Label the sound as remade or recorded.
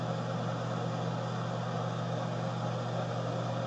recorded